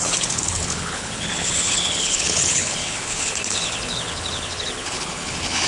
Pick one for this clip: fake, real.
fake